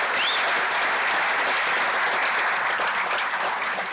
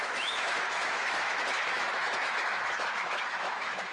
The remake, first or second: second